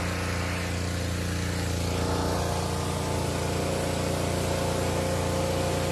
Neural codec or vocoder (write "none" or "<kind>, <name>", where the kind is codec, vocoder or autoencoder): none